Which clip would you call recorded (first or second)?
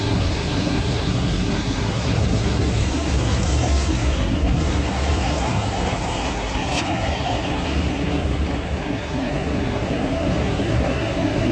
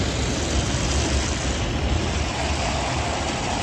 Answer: second